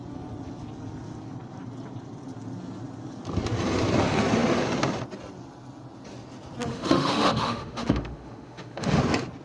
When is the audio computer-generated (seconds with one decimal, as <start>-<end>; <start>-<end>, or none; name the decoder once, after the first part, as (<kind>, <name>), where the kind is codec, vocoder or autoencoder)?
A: 6.7-9.0 (autoencoder, DAC-VAE)